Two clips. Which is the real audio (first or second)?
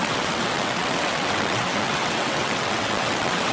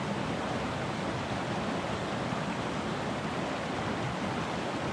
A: second